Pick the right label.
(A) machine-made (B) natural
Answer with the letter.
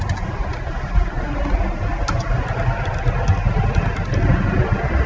B